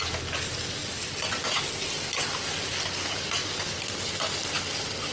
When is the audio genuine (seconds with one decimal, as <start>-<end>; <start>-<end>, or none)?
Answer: 0.0-5.1